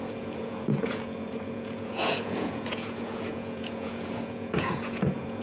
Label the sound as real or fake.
fake